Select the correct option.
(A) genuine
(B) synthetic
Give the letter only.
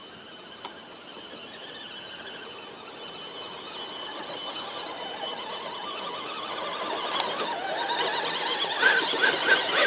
A